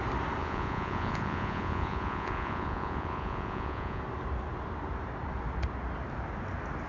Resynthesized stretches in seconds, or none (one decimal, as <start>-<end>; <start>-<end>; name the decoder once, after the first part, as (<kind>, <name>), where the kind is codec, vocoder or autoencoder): 0.4-4.0 (vocoder, Vocos)